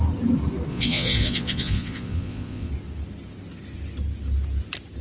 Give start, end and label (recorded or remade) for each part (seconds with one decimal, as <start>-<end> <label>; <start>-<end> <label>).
0.0-0.7 recorded; 0.7-2.7 remade; 2.7-5.0 recorded